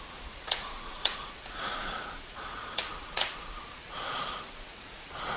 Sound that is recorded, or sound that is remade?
remade